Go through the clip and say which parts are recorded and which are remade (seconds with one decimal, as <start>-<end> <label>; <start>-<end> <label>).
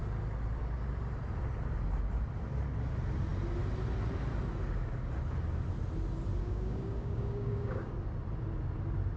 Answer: 0.0-6.4 recorded; 6.4-7.9 remade; 7.9-9.2 recorded